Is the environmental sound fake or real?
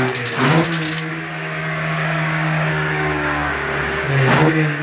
fake